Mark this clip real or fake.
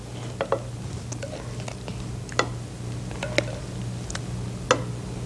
real